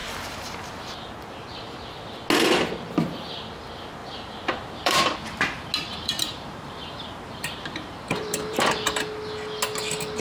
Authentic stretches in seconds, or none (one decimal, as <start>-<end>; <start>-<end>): 1.6-4.0; 5.0-5.9; 8.6-10.2